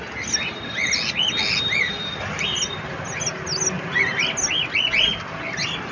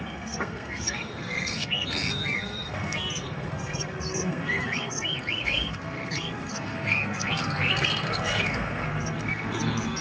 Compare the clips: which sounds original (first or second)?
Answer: first